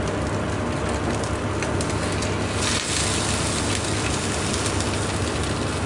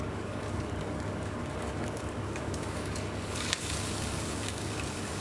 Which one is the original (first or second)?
first